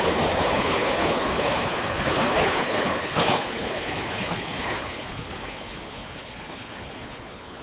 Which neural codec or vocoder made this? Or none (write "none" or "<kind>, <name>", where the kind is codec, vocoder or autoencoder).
codec, HILCodec